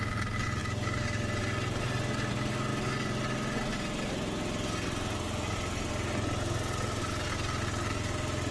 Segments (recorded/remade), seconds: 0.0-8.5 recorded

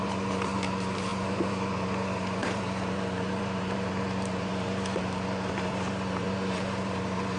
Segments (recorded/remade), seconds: 0.0-7.4 remade

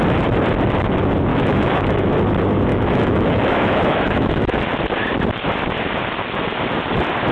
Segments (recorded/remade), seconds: 0.0-1.3 recorded; 1.3-2.1 remade; 2.1-2.7 recorded; 2.7-4.6 remade; 4.6-7.3 recorded

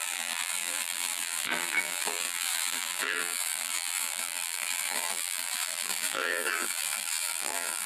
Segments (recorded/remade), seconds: 0.0-7.9 remade

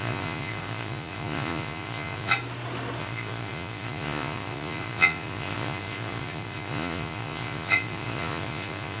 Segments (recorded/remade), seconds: 0.0-2.3 remade; 2.3-3.0 recorded; 3.0-9.0 remade